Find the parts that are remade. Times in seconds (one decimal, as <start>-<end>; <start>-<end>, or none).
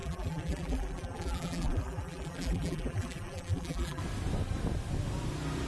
0.0-4.0